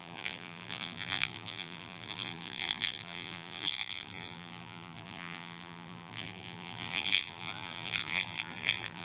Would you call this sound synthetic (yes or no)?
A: yes